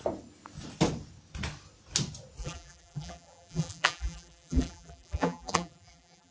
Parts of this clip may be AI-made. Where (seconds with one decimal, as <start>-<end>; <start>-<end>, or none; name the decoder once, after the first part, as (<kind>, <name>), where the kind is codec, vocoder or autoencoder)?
2.4-6.3 (vocoder, BigVGAN v2)

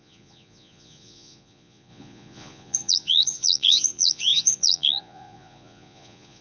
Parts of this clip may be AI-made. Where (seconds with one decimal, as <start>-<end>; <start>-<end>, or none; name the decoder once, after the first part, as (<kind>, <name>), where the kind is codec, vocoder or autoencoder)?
0.0-6.4 (vocoder, Vocos)

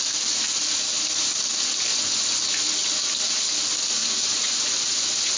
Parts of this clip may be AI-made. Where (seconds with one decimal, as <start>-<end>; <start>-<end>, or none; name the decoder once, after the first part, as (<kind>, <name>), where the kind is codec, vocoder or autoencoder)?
1.9-2.4 (vocoder, Vocos); 4.0-5.4

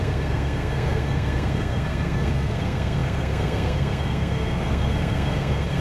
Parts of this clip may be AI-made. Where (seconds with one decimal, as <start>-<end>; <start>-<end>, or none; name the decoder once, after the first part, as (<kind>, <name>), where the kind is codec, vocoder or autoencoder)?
0.0-5.8 (codec, SNAC)

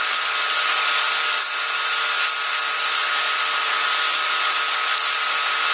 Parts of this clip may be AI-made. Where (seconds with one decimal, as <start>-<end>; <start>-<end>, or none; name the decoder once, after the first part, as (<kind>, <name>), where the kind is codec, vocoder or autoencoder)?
3.0-5.3 (vocoder, BigVGAN v2)